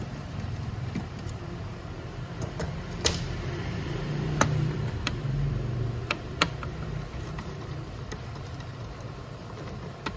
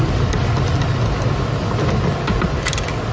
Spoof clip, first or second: first